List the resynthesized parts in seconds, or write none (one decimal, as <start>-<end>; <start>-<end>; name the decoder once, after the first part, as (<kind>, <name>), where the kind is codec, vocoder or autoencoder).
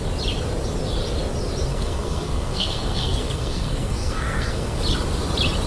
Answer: 1.7-4.8 (codec, SNAC)